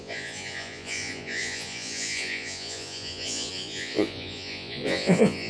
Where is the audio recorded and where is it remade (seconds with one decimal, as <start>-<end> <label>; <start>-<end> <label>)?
0.0-5.5 remade